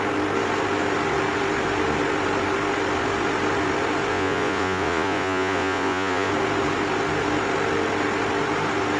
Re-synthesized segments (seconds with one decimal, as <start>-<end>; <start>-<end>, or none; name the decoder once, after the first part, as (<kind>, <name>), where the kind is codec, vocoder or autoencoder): 4.1-6.3 (vocoder, Vocos)